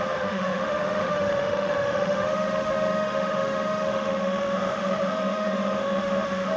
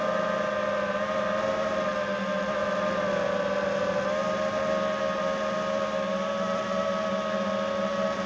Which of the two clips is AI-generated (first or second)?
first